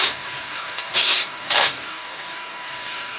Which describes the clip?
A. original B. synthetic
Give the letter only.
B